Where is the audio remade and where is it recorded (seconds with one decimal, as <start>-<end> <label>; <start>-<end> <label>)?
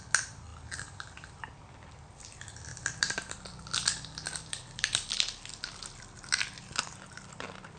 0.0-0.5 recorded; 0.5-1.4 remade; 1.4-2.7 recorded; 2.7-6.8 remade; 6.8-7.8 recorded